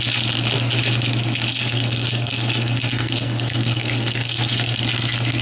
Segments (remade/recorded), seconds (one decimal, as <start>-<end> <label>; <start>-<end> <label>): 0.0-1.6 recorded; 1.6-4.8 remade; 4.8-5.4 recorded